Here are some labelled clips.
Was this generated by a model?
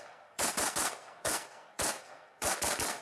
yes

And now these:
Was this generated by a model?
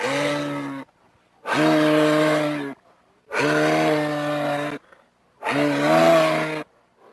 no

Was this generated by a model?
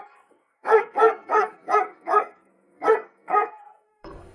yes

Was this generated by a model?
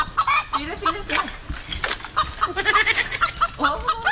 no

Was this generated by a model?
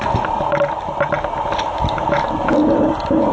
no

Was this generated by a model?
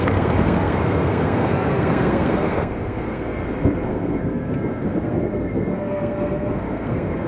yes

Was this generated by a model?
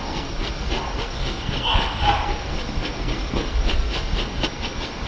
yes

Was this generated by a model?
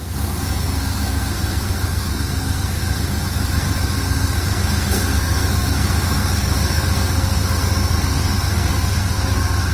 yes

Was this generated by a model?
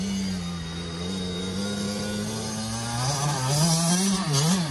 no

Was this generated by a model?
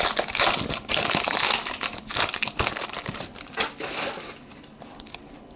no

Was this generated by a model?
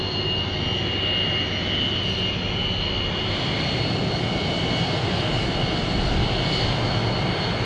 no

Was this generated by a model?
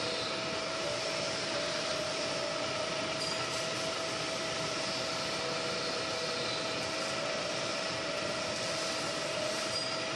no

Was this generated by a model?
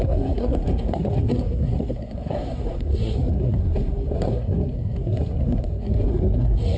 yes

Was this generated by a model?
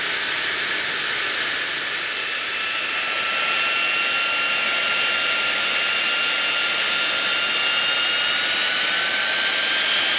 no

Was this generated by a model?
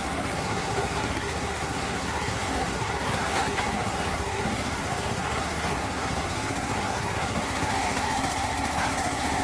yes